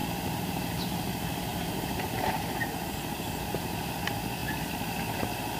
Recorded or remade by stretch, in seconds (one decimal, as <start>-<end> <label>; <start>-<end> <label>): 0.0-0.8 remade; 0.8-1.5 recorded; 1.5-3.9 remade; 3.9-5.6 recorded